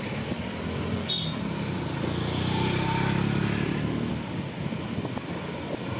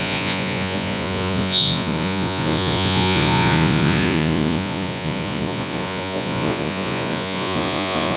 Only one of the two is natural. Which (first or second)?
first